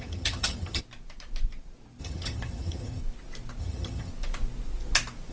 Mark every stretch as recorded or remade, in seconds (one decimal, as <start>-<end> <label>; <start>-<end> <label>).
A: 0.0-0.8 remade; 0.8-2.0 recorded; 2.0-3.0 remade; 3.0-3.6 recorded; 3.6-4.1 remade; 4.1-5.3 recorded